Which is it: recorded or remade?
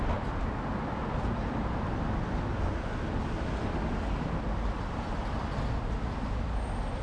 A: recorded